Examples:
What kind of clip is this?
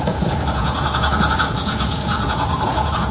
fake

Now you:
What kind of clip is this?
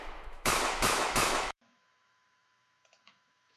fake